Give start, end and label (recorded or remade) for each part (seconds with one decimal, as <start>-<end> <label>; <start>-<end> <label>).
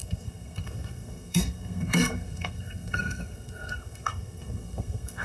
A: 0.0-5.2 remade